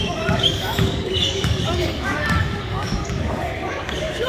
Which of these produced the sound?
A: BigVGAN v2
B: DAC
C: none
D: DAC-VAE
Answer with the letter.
B